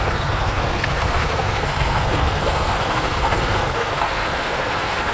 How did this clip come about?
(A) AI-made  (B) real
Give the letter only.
A